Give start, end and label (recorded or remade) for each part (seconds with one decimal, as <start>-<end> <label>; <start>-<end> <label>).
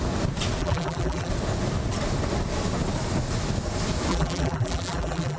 0.0-0.6 recorded; 0.6-1.3 remade; 1.3-4.1 recorded; 4.1-5.4 remade